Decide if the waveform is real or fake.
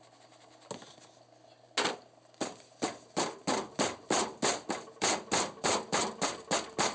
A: real